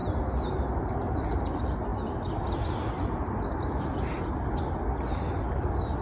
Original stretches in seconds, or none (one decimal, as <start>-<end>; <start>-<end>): 0.0-6.0